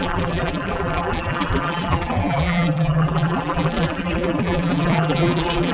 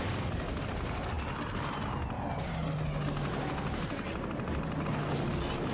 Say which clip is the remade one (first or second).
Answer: first